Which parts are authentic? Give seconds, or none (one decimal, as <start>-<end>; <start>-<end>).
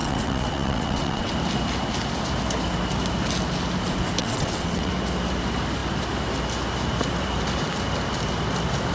1.3-4.2; 4.9-8.9